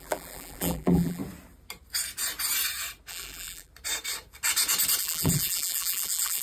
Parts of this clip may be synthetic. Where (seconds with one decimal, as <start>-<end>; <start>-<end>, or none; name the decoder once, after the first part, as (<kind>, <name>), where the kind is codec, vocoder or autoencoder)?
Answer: 0.0-1.2 (vocoder, BigVGAN v2); 3.1-3.7; 5.0-6.4